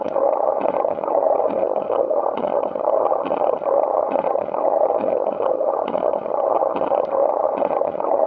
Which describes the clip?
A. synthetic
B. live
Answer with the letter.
A